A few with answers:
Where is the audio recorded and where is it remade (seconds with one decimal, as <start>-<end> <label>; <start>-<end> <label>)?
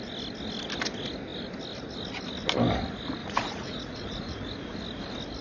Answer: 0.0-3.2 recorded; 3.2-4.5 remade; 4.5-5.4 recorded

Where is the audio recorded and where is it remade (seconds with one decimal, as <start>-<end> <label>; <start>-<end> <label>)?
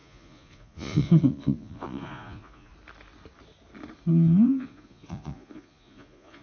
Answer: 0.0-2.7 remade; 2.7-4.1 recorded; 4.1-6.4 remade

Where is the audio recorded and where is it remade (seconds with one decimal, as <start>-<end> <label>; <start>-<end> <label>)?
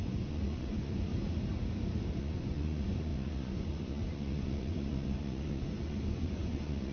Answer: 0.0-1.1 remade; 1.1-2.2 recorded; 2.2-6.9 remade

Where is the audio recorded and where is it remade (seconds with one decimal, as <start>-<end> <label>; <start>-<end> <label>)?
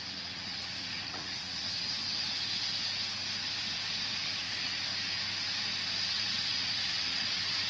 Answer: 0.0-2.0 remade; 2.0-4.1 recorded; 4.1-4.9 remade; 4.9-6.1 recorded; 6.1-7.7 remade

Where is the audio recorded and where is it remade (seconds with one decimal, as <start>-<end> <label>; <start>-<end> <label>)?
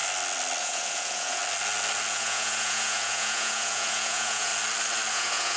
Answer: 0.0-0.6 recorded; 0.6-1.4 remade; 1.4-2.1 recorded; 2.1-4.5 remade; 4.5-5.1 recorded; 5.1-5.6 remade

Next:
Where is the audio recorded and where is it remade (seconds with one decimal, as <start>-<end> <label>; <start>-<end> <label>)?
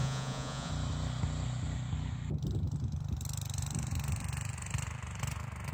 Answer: 0.0-0.7 remade; 0.7-5.7 recorded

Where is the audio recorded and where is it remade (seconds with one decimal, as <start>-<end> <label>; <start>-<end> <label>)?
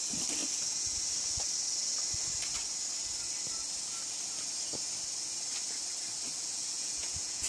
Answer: 0.0-0.4 recorded; 0.4-1.0 remade; 1.0-6.4 recorded; 6.4-7.5 remade